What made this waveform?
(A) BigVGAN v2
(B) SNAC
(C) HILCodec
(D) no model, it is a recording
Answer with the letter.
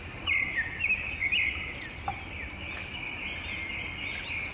D